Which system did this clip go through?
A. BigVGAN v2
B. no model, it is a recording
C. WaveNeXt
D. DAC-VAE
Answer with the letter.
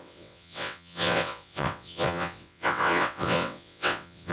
C